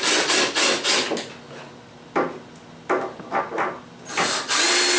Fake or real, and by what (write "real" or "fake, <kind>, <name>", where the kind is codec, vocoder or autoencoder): real